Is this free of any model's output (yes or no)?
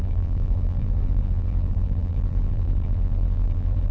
no